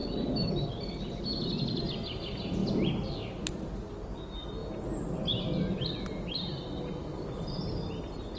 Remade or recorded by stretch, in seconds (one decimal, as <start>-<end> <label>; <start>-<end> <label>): 0.0-8.4 recorded